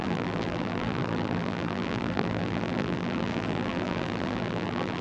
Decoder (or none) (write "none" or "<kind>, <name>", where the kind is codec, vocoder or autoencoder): vocoder, BigVGAN v2